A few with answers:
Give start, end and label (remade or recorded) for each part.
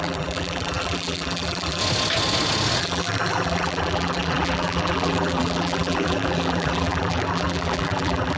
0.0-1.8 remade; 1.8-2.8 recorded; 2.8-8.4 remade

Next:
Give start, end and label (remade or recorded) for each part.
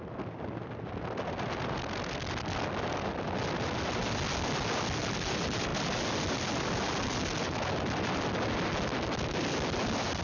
0.0-10.2 recorded